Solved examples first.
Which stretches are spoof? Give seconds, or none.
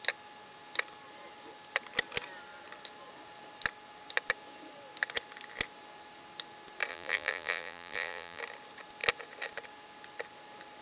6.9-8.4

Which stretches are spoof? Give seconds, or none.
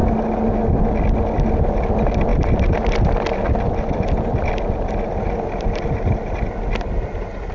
none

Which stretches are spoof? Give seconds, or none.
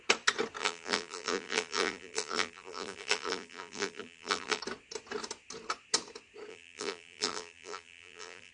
0.6-4.6; 6.5-8.5